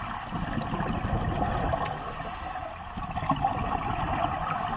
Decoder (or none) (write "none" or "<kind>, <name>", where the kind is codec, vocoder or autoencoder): none